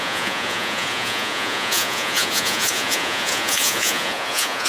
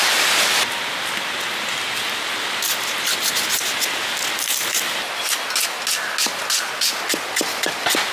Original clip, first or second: second